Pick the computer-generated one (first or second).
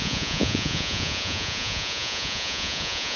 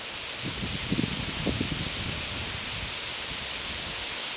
first